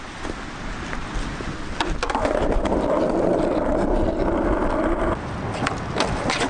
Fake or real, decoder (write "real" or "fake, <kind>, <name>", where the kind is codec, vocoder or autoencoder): real